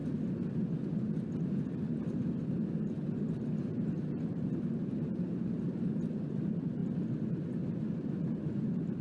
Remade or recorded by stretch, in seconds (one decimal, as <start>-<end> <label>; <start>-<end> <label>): 0.0-4.3 recorded; 4.3-6.8 remade; 6.8-8.0 recorded; 8.0-9.0 remade